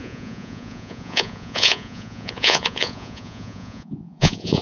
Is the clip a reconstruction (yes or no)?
yes